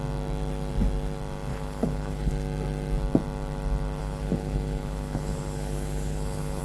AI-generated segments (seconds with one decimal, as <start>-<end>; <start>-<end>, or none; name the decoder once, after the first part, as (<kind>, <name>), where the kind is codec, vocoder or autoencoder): 1.5-2.3 (codec, HILCodec); 4.0-6.6